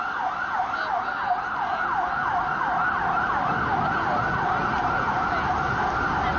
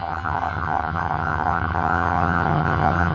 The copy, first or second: second